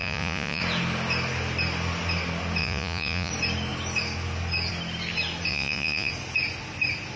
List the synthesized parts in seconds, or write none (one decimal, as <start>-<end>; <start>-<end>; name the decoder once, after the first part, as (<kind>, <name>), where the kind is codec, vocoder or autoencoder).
0.0-0.6 (vocoder, Vocos); 2.6-3.3; 5.5-6.1